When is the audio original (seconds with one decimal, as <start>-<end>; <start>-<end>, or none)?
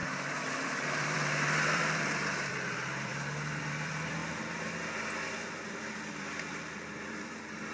0.0-0.6; 3.1-3.6; 4.2-6.1